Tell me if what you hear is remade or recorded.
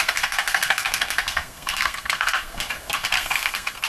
remade